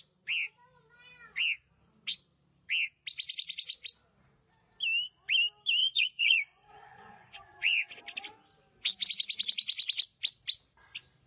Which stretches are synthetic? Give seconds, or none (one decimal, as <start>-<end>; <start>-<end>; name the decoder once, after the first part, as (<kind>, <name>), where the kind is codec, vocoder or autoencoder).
5.8-8.0 (vocoder, Vocos)